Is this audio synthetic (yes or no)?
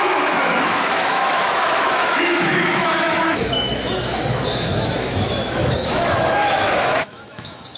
yes